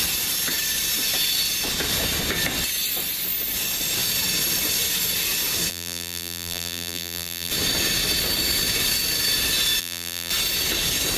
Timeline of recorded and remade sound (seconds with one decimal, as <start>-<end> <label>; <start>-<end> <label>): 0.0-5.7 recorded; 5.7-7.5 remade; 7.5-9.8 recorded; 9.8-10.3 remade; 10.3-11.2 recorded